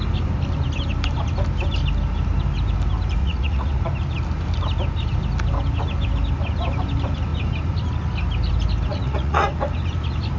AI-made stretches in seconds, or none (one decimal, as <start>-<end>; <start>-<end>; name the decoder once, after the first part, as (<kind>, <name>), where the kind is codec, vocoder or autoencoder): 3.2-3.8 (vocoder, Vocos); 8.9-9.5